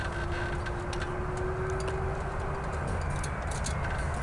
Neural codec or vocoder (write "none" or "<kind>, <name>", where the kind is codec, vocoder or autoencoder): none